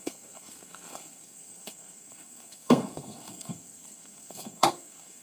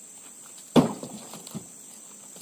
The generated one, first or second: first